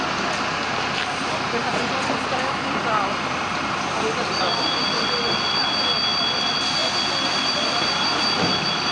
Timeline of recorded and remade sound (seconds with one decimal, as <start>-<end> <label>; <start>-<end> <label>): 0.0-8.9 recorded